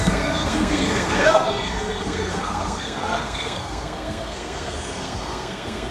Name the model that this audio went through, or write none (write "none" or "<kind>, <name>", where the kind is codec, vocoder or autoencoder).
codec, SNAC